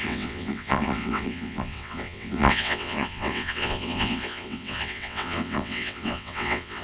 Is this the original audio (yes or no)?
no